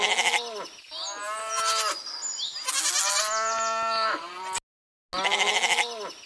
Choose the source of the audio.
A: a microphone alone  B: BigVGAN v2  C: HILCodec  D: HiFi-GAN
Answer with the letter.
A